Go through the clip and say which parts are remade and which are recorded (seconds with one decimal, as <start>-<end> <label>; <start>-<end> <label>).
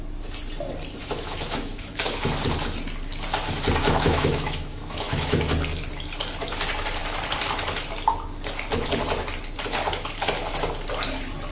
0.0-1.0 recorded; 1.0-2.2 remade; 2.2-3.8 recorded; 3.8-5.5 remade; 5.5-11.5 recorded